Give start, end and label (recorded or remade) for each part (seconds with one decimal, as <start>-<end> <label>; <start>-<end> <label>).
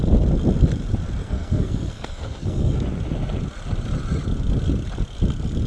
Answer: 0.0-1.2 recorded; 1.2-2.7 remade; 2.7-5.7 recorded